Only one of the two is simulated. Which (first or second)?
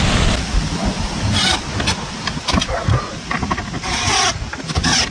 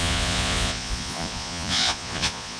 second